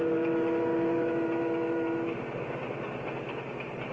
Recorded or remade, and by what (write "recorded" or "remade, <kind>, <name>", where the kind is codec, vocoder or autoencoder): recorded